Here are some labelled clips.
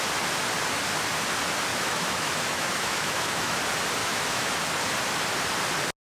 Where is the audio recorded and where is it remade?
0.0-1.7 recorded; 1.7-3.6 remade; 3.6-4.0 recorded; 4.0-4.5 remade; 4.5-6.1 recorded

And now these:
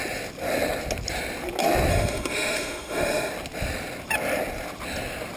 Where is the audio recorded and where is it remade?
0.0-1.9 recorded; 1.9-3.3 remade; 3.3-5.4 recorded

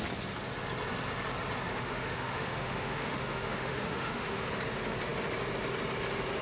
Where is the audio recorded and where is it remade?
0.0-1.7 recorded; 1.7-4.4 remade; 4.4-6.4 recorded

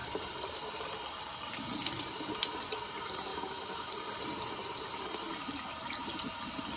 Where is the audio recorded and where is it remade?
0.0-3.3 recorded; 3.3-3.9 remade; 3.9-6.8 recorded